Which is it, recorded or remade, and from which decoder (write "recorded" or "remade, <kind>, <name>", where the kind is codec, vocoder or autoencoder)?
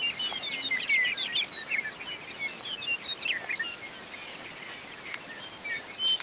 recorded